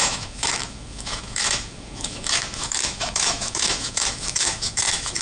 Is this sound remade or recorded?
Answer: remade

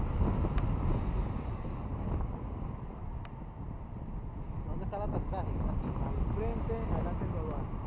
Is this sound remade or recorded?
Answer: recorded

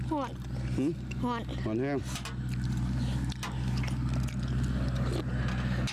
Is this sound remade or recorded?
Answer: recorded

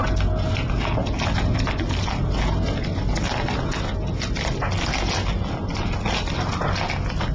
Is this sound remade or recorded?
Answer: recorded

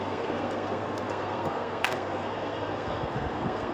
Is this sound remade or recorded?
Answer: remade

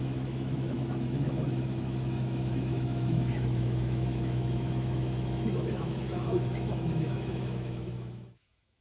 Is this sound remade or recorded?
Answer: remade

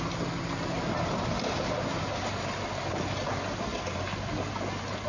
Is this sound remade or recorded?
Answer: recorded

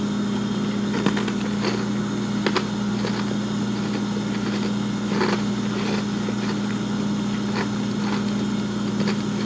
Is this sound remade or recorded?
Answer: recorded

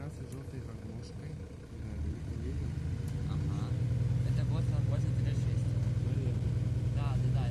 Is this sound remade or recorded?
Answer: recorded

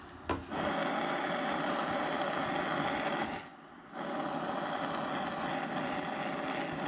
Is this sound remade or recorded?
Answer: recorded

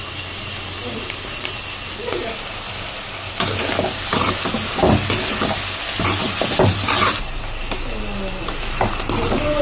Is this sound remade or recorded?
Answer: recorded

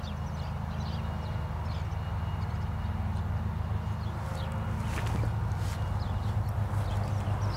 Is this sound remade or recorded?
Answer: recorded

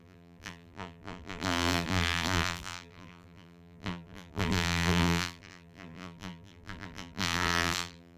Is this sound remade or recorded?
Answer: remade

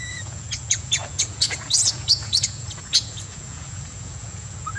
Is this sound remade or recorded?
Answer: remade